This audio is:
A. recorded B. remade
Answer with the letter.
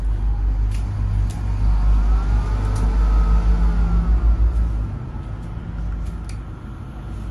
A